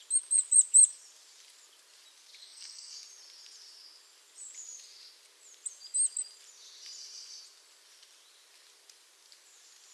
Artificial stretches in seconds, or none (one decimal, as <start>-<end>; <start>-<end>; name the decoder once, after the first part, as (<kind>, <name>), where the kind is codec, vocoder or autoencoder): 2.4-2.9 (codec, SNAC)